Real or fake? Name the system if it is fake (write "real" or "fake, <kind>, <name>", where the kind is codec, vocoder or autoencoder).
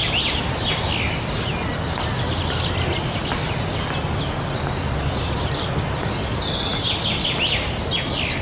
real